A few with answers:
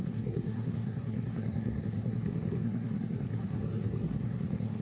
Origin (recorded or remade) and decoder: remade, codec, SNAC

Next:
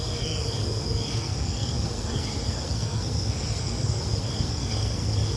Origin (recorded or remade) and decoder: remade, codec, SNAC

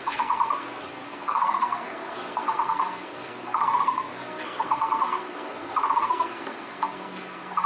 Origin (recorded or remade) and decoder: remade, codec, SNAC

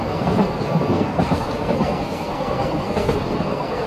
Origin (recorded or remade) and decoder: remade, codec, SNAC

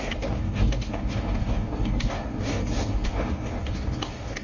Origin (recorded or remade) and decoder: remade, codec, SNAC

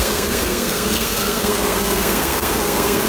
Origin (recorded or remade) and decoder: remade, codec, SNAC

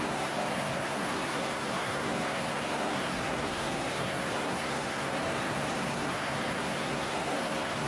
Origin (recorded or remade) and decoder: remade, codec, SNAC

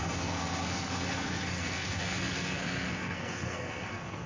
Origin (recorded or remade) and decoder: remade, codec, SNAC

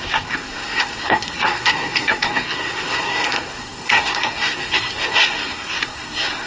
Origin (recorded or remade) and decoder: remade, codec, SNAC